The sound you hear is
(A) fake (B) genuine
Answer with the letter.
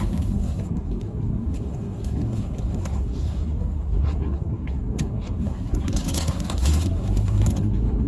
A